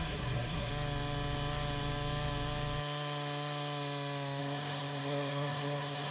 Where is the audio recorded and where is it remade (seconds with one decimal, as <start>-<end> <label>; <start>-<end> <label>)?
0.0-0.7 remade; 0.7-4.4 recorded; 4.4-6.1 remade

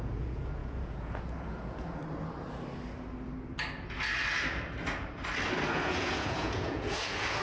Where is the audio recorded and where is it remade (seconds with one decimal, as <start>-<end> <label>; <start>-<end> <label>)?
0.0-2.0 remade; 2.0-5.7 recorded; 5.7-7.4 remade

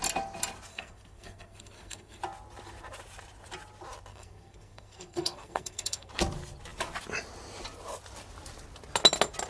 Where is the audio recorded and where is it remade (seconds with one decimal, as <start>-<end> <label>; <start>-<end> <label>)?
0.0-0.7 recorded; 0.7-2.2 remade; 2.2-4.1 recorded; 4.1-6.1 remade; 6.1-9.5 recorded